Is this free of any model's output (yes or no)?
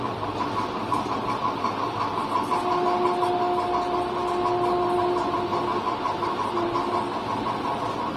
yes